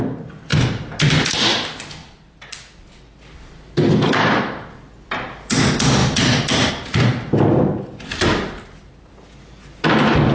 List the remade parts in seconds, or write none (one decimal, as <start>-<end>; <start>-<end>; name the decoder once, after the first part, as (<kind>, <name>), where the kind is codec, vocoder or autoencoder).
0.5-1.2 (vocoder, BigVGAN v2); 2.0-5.6; 6.0-6.7